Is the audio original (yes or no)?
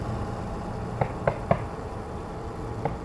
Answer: yes